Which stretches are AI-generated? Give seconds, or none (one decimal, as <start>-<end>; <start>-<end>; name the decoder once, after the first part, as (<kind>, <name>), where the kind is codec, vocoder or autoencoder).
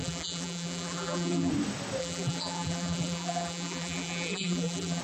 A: 0.0-1.5 (vocoder, BigVGAN v2); 2.0-5.0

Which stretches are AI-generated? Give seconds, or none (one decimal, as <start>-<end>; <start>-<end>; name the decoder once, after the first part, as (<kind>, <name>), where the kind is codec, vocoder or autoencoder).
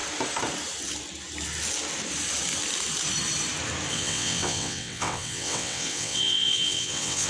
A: 3.9-7.3 (vocoder, WaveNeXt)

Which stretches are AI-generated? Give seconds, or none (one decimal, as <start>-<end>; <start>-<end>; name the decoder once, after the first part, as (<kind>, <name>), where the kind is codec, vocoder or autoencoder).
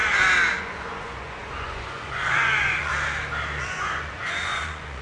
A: 0.6-2.9 (vocoder, Vocos); 3.6-5.0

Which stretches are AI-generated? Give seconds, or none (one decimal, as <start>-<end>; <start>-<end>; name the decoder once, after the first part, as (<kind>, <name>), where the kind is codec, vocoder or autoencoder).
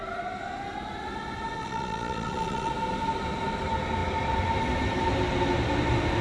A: 1.6-2.7 (vocoder, Vocos)